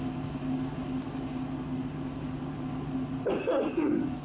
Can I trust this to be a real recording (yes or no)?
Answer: yes